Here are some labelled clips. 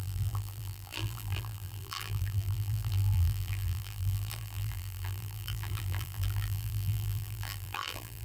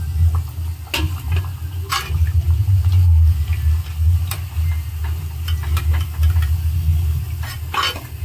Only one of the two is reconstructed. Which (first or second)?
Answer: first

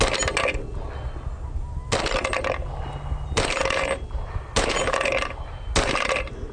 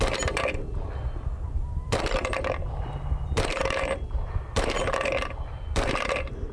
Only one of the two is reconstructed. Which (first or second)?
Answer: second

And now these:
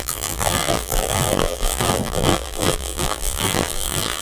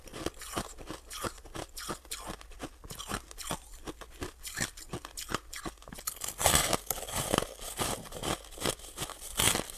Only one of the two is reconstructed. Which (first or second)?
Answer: first